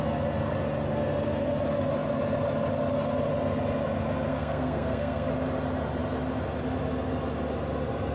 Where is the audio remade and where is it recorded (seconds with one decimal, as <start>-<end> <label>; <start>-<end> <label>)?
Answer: 0.0-4.3 recorded; 4.3-5.3 remade; 5.3-8.1 recorded